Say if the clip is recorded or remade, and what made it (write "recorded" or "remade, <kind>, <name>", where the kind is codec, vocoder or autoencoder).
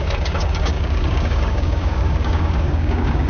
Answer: remade, codec, DAC